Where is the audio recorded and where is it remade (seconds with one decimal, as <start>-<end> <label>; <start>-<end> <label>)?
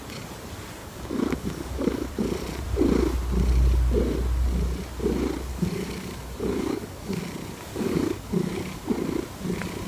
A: 0.0-0.8 recorded; 0.8-2.1 remade; 2.1-5.5 recorded; 5.5-7.2 remade; 7.2-7.7 recorded; 7.7-8.8 remade; 8.8-9.9 recorded